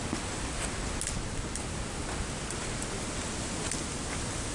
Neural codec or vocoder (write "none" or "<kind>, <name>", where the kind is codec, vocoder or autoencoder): none